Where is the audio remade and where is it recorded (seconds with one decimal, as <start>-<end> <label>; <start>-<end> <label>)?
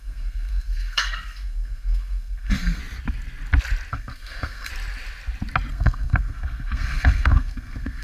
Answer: 0.0-2.8 remade; 2.8-3.9 recorded; 3.9-4.7 remade; 4.7-5.7 recorded; 5.7-8.0 remade